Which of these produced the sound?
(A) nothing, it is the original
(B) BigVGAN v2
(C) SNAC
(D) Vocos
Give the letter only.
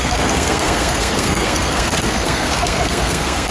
C